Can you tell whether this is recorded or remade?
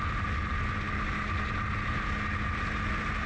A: recorded